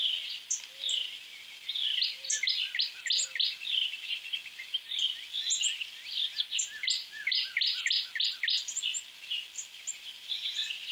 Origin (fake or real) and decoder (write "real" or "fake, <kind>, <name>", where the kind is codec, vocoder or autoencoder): fake, vocoder, BigVGAN v2